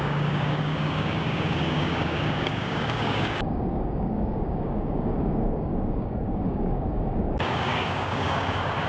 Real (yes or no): no